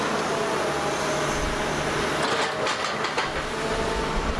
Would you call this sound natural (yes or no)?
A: yes